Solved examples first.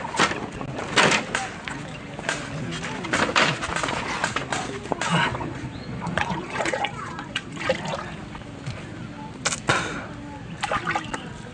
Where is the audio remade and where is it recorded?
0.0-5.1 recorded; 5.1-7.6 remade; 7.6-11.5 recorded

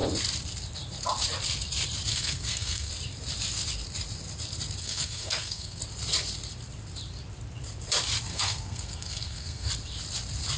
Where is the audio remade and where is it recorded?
0.0-2.1 recorded; 2.1-2.9 remade; 2.9-4.8 recorded; 4.8-5.8 remade; 5.8-8.3 recorded; 8.3-9.7 remade; 9.7-10.6 recorded

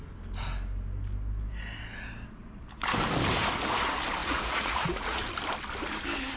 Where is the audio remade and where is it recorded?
0.0-4.2 recorded; 4.2-5.3 remade; 5.3-6.4 recorded

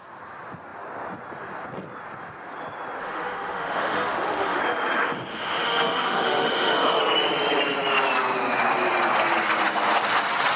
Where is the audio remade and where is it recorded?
0.0-3.0 recorded; 3.0-4.6 remade; 4.6-5.3 recorded; 5.3-7.0 remade; 7.0-10.6 recorded

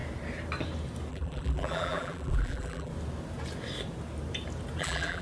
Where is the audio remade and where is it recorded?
0.0-1.1 recorded; 1.1-2.9 remade; 2.9-4.8 recorded; 4.8-5.2 remade